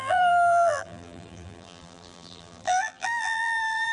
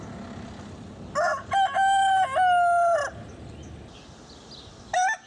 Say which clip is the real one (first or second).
second